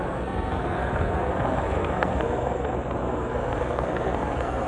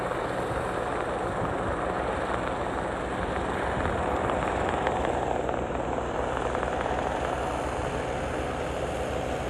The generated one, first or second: first